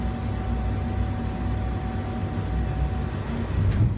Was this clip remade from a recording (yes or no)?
no